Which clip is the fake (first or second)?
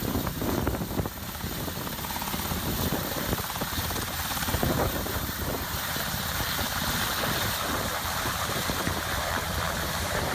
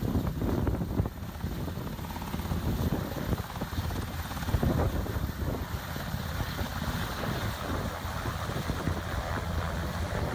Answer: first